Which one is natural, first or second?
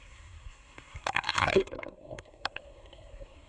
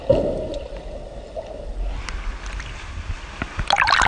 second